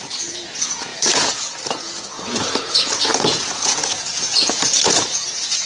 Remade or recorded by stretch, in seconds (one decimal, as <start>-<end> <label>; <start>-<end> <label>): 0.0-5.7 remade

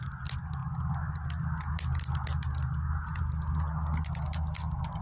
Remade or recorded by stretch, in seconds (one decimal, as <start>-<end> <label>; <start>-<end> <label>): 0.0-5.0 recorded

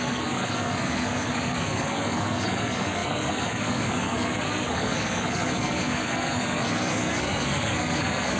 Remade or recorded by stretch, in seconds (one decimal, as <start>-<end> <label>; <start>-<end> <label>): 0.0-8.4 remade

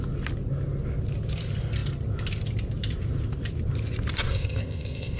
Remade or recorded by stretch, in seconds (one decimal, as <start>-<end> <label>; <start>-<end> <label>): 0.0-4.3 recorded; 4.3-5.2 remade